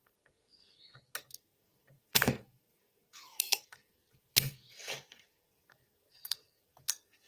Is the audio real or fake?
fake